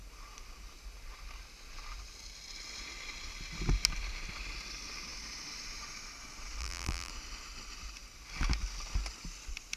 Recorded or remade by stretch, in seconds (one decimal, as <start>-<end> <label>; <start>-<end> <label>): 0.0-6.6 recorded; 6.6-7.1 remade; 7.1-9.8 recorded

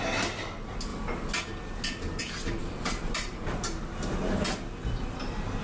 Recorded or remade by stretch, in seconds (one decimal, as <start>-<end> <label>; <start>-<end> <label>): 0.0-2.6 recorded; 2.6-3.8 remade; 3.8-5.6 recorded

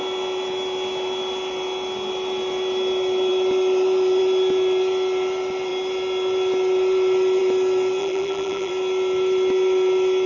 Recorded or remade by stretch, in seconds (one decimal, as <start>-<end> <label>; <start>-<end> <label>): 0.0-8.0 recorded; 8.0-8.7 remade; 8.7-10.3 recorded

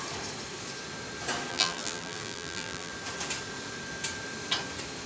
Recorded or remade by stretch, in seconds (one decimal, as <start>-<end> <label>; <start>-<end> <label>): 0.0-1.5 recorded; 1.5-2.9 remade; 2.9-5.1 recorded